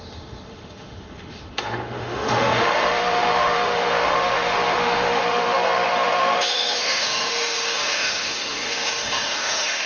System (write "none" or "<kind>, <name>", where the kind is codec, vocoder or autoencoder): autoencoder, DAC-VAE